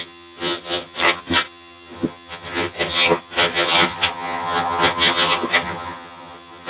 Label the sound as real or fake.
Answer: fake